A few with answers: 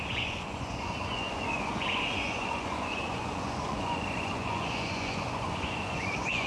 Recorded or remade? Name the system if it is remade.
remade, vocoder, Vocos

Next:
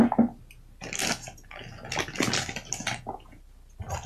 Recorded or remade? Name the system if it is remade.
recorded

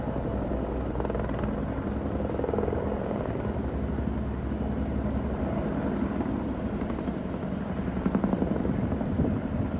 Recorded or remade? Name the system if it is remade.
recorded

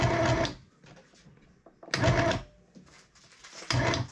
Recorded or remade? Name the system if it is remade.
recorded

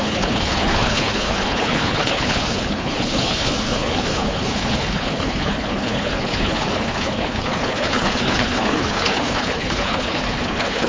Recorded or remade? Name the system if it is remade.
remade, codec, HILCodec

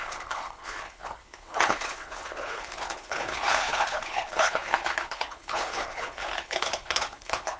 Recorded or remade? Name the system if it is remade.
remade, codec, HILCodec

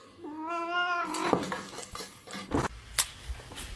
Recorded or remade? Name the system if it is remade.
recorded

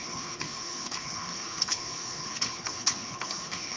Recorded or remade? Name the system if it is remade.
remade, codec, HILCodec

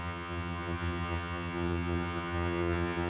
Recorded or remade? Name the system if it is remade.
remade, vocoder, HiFi-GAN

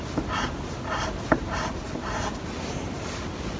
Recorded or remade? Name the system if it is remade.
recorded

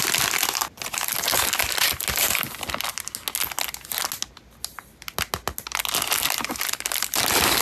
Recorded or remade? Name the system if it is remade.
recorded